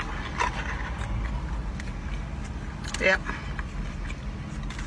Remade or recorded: recorded